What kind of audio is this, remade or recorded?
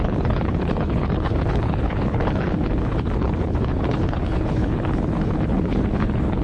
remade